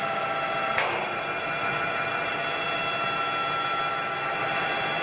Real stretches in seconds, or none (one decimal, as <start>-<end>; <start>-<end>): 2.8-4.4